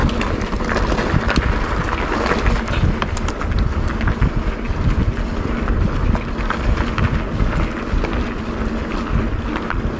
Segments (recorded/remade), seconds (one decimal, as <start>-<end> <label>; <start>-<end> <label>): 0.0-10.0 recorded